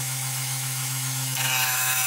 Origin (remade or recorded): remade